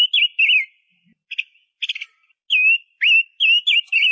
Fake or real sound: real